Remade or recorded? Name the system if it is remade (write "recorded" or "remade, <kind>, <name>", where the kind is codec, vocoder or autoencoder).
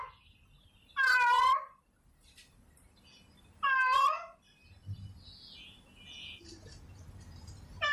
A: recorded